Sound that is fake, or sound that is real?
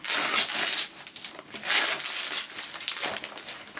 real